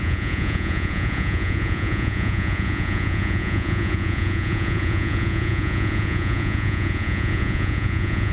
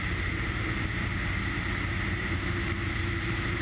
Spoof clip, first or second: first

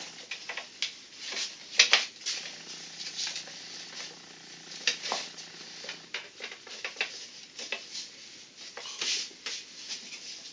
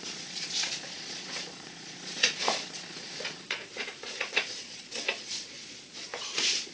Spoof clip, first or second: second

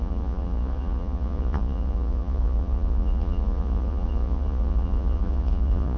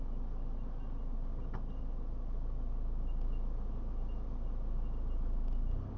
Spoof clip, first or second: first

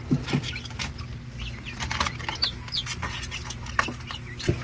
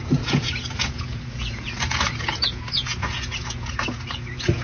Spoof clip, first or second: second